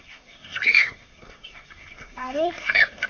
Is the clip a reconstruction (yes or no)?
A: yes